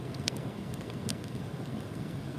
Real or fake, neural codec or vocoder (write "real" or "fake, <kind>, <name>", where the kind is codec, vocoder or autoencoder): fake, codec, SNAC